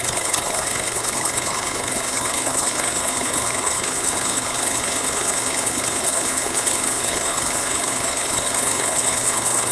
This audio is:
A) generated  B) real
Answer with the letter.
A